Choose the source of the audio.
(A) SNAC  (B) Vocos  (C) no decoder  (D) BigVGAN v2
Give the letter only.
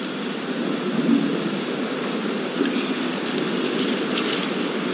C